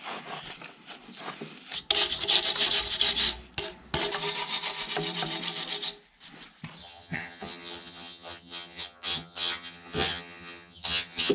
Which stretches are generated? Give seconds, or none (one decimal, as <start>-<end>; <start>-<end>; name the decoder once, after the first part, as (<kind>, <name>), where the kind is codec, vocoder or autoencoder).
6.8-11.3 (vocoder, HiFi-GAN)